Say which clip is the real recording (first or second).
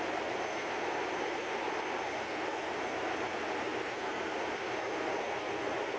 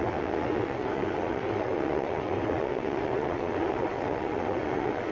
first